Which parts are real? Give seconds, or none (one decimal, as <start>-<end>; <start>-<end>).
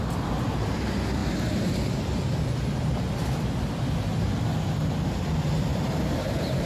0.0-5.7